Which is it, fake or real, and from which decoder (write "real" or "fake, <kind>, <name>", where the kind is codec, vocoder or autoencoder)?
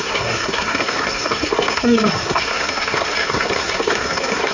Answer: fake, codec, SNAC